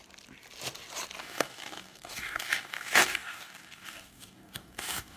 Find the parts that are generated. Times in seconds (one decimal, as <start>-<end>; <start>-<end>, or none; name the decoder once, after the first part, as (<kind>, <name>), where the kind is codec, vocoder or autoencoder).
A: 1.2-5.2 (codec, DAC)